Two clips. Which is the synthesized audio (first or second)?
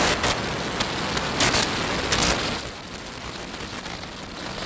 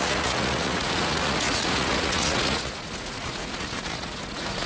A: second